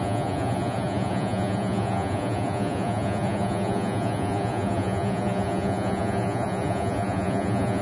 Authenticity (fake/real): fake